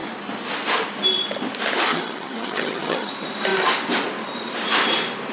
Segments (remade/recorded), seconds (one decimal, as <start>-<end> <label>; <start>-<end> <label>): 0.0-1.9 recorded; 1.9-3.1 remade; 3.1-5.3 recorded